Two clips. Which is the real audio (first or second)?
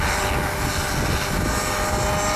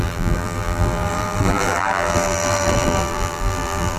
first